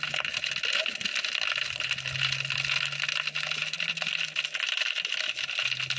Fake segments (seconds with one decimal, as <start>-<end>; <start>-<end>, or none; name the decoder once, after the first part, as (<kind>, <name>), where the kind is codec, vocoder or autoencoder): none